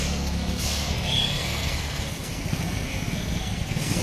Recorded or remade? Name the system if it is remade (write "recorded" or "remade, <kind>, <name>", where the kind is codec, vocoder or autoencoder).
remade, codec, SNAC